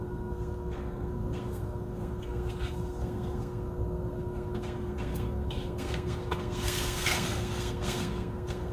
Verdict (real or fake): fake